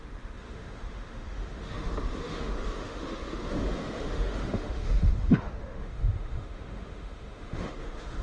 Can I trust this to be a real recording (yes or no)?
no